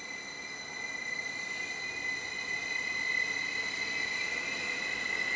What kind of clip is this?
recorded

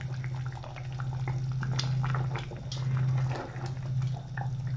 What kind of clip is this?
recorded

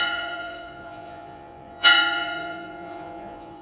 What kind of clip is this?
remade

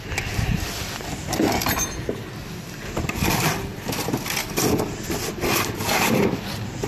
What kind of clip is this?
recorded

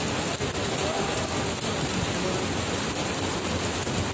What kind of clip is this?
recorded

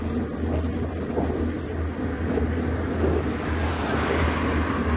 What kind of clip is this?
recorded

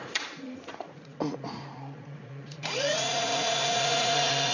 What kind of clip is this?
remade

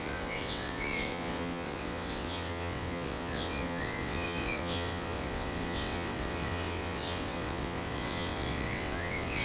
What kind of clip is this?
remade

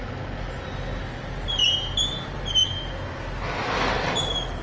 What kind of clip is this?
recorded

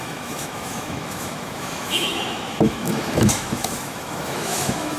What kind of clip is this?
remade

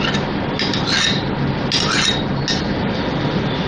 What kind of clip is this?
recorded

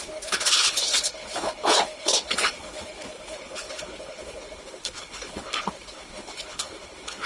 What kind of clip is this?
remade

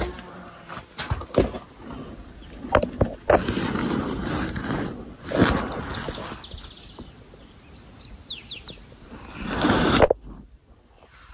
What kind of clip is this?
recorded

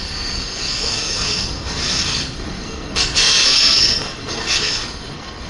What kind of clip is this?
remade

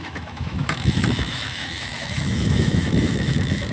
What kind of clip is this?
remade